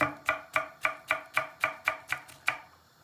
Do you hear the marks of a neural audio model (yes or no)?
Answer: no